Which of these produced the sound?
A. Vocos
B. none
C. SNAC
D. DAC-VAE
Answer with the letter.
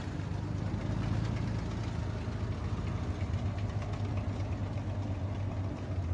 B